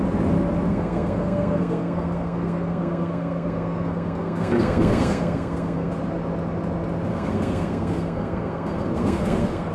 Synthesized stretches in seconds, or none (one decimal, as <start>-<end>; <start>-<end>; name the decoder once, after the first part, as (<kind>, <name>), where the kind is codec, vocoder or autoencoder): 0.7-5.9 (codec, SNAC); 7.1-9.7

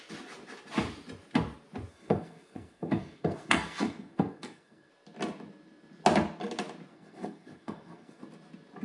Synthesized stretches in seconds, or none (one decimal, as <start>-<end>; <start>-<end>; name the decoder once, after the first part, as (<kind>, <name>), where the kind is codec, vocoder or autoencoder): 1.9-4.9 (codec, SNAC); 6.9-8.2

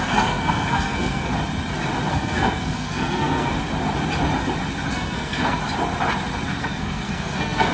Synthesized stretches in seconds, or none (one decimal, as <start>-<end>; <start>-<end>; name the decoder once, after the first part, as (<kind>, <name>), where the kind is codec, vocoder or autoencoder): 0.0-1.3 (codec, SNAC); 2.1-3.5; 4.9-5.6; 6.6-7.7

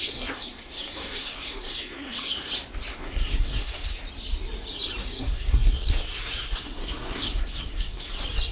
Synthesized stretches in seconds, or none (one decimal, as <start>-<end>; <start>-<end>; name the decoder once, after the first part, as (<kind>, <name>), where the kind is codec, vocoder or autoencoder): 0.0-2.5 (codec, SNAC); 2.9-4.0; 5.0-8.1

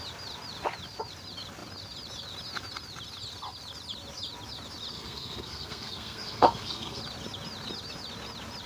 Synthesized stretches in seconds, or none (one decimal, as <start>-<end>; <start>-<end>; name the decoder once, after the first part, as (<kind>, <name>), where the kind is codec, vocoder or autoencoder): 4.9-7.0 (codec, SNAC)

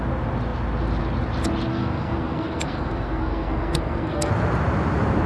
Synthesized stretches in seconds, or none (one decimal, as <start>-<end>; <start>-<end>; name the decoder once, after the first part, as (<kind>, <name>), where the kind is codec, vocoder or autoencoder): 1.7-4.3 (codec, SNAC)

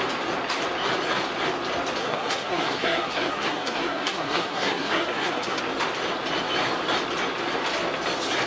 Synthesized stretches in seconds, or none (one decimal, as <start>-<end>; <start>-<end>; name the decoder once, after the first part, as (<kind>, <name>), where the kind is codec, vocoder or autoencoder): 2.0-5.6 (codec, SNAC)